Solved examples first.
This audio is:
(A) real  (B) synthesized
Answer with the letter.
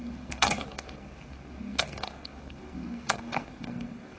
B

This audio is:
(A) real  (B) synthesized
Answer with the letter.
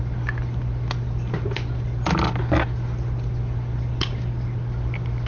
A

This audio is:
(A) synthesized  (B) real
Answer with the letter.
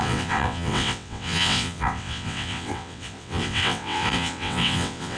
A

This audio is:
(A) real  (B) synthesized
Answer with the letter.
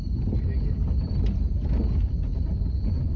A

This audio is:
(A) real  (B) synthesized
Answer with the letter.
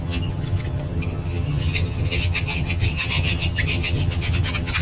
B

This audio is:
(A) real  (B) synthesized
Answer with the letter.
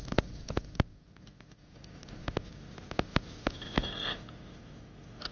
A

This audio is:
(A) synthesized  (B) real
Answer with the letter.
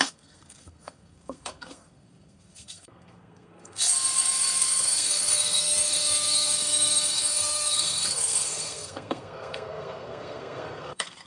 A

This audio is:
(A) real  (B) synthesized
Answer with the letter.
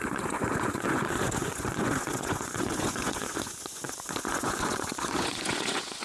B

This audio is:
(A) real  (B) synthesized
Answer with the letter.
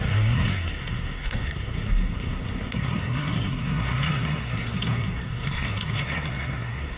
B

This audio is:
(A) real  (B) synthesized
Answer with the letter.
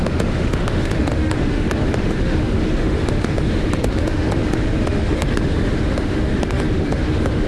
B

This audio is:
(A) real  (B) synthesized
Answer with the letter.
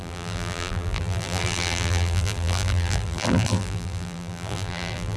B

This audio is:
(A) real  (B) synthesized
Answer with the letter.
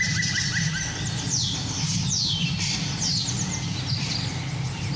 A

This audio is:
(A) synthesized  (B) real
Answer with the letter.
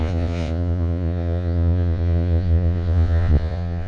A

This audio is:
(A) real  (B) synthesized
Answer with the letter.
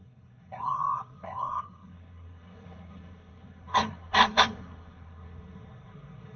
B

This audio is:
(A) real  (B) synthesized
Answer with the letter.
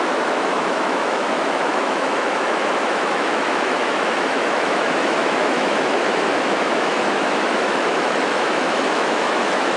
B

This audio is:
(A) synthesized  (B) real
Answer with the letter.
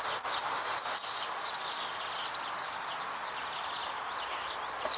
B